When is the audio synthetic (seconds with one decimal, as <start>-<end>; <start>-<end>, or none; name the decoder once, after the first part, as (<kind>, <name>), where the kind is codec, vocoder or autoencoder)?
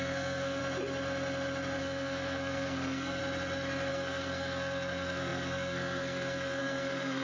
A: 0.0-0.6 (codec, SNAC); 1.8-3.2; 3.9-7.2